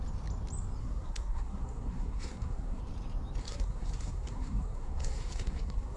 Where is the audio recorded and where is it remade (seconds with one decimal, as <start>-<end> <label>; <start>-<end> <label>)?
0.0-0.8 recorded; 0.8-2.8 remade; 2.8-3.4 recorded; 3.4-6.0 remade